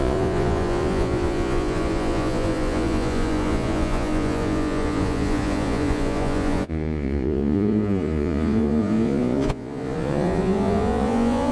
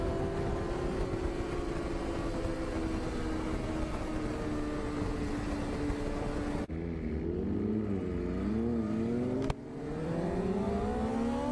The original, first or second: second